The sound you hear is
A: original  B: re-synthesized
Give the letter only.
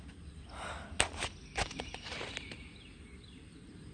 A